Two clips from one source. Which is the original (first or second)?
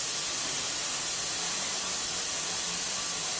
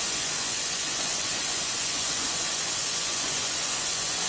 first